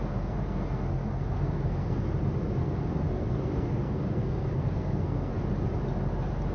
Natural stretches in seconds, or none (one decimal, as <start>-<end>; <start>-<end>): 2.1-2.6; 5.3-6.5